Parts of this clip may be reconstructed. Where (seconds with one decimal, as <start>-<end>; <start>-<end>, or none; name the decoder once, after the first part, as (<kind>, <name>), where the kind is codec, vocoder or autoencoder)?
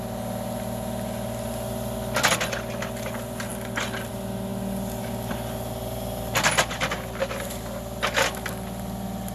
none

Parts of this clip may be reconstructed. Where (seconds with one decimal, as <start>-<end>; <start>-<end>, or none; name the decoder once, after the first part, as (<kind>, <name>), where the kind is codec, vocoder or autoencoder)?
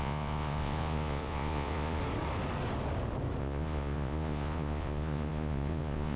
0.0-2.0 (vocoder, Vocos); 3.4-6.2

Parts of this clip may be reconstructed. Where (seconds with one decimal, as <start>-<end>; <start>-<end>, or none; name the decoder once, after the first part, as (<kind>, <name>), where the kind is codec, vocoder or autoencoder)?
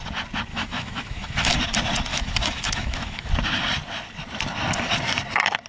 0.5-1.5 (autoencoder, DAC-VAE); 2.1-3.3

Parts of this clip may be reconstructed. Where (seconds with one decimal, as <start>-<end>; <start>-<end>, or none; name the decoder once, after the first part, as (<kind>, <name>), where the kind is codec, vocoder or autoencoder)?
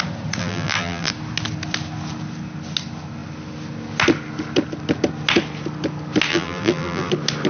0.4-1.1 (vocoder, BigVGAN v2); 6.3-7.1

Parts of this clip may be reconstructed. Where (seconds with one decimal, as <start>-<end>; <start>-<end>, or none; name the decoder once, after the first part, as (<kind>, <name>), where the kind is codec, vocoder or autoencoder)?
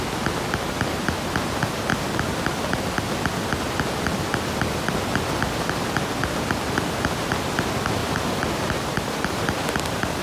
8.0-9.4 (vocoder, BigVGAN v2)